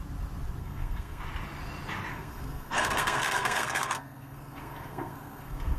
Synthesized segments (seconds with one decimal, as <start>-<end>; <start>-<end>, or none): 0.6-1.2; 2.1-5.8